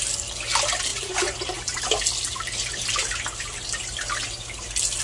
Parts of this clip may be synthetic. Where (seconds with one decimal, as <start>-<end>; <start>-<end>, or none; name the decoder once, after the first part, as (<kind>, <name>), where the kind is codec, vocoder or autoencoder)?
0.9-1.8 (vocoder, BigVGAN v2); 2.7-4.0